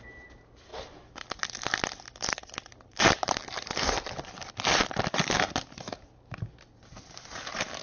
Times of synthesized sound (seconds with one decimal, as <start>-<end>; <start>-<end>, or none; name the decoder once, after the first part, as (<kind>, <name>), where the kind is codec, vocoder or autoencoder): 0.0-0.7 (vocoder, BigVGAN v2); 2.4-3.4; 6.7-7.8